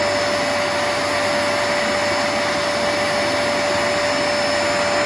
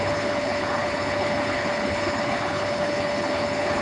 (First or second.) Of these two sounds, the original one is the first